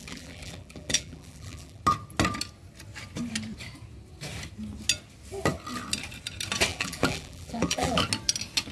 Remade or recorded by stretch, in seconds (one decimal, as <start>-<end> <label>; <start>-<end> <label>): 0.0-1.8 remade; 1.8-6.7 recorded; 6.7-8.0 remade; 8.0-8.7 recorded